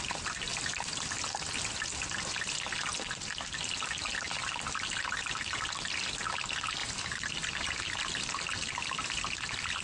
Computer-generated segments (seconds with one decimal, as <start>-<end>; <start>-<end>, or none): 6.8-8.3